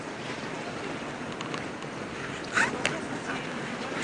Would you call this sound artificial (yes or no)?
no